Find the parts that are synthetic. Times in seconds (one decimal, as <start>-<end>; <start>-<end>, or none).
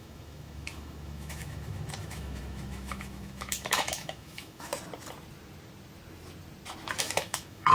0.0-4.7; 7.0-7.7